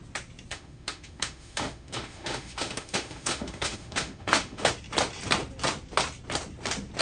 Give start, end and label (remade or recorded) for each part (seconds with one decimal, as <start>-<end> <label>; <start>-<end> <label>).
0.0-0.5 recorded; 0.5-4.7 remade; 4.7-7.0 recorded